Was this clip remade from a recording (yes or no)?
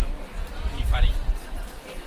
yes